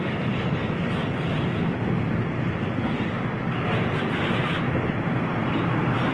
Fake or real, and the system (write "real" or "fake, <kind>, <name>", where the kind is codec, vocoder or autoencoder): real